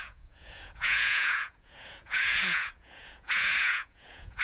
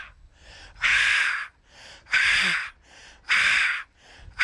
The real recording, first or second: second